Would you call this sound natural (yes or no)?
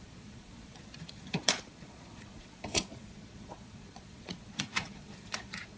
no